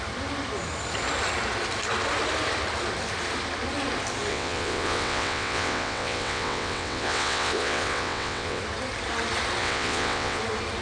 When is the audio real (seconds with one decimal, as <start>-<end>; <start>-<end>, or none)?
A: 0.0-4.3; 8.6-9.6; 10.4-10.8